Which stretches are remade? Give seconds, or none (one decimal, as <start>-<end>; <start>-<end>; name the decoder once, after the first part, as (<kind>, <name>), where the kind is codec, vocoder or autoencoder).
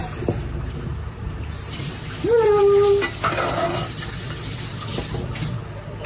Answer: 0.0-2.6 (vocoder, BigVGAN v2)